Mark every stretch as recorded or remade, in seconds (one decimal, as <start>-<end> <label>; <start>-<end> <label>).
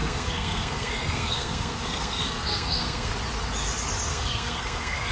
0.0-3.1 remade; 3.1-4.1 recorded; 4.1-5.1 remade